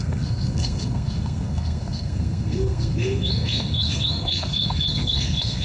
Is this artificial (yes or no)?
yes